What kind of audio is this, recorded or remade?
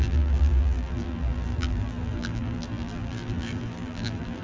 remade